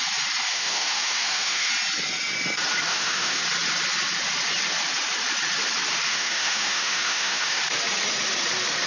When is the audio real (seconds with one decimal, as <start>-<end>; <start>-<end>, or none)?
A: 0.0-0.5; 1.7-2.9; 3.4-6.1; 7.6-8.9